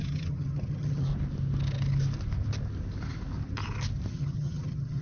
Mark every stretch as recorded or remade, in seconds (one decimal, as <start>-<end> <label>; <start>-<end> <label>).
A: 0.0-1.1 remade; 1.1-4.1 recorded; 4.1-5.0 remade